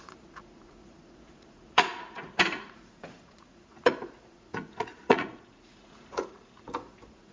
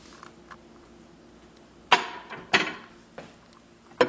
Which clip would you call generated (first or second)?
first